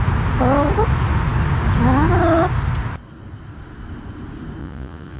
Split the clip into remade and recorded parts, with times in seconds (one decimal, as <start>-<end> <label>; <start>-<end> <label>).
0.0-4.6 recorded; 4.6-5.2 remade